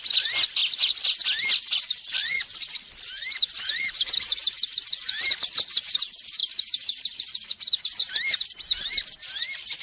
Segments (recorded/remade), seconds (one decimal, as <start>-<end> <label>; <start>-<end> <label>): 0.0-9.8 recorded